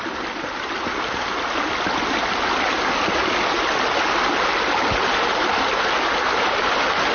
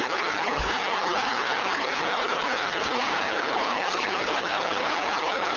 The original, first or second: first